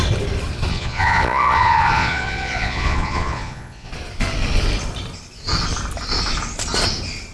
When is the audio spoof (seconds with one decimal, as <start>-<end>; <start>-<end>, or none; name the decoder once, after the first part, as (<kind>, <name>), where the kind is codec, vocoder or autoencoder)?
0.7-3.9 (vocoder, Vocos)